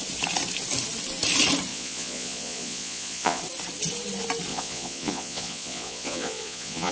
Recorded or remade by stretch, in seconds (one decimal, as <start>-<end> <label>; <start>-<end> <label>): 0.0-1.7 recorded; 1.7-3.4 remade; 3.4-4.5 recorded; 4.5-6.9 remade